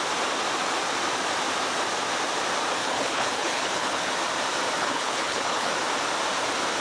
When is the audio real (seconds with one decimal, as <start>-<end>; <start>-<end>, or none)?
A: 0.0-2.8; 4.1-4.8; 5.7-6.8